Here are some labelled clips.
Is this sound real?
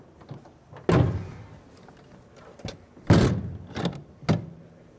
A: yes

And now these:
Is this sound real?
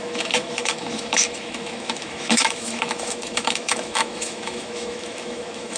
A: no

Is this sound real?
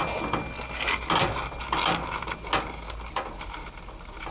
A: yes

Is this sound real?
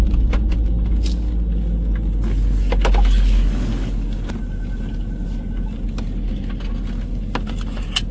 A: yes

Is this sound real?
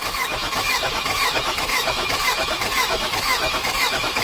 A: no